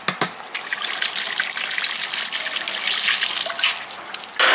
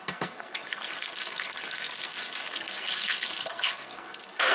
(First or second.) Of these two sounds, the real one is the first